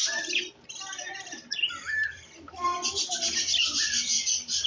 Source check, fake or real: fake